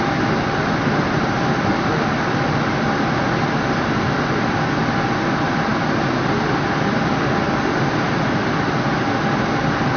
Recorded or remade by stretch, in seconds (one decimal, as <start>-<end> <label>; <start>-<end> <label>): 0.0-10.0 recorded